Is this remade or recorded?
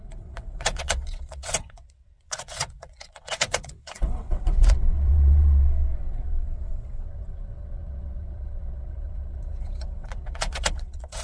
remade